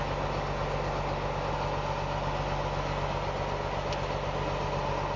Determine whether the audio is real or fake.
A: real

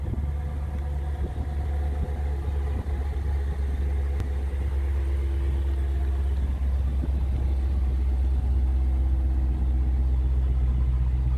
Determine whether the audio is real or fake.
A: real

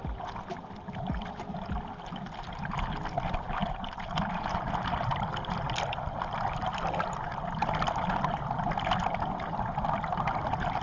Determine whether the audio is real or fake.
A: real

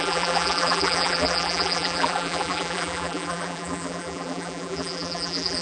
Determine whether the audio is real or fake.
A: fake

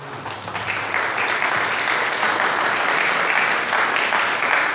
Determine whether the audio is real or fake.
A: real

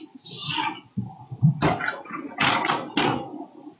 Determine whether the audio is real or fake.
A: real